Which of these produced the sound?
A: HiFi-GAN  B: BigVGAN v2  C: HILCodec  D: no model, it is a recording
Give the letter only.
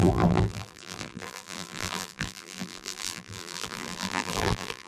B